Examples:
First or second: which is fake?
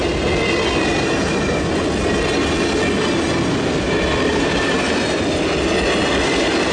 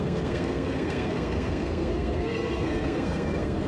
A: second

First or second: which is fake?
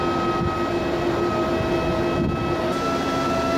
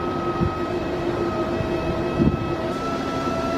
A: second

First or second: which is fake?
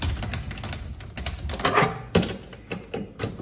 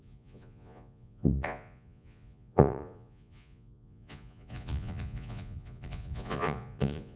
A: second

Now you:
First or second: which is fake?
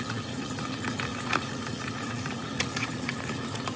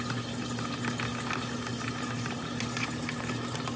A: first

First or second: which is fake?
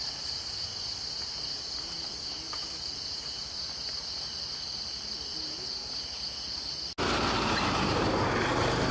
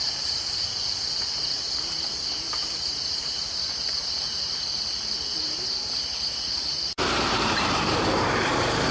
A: second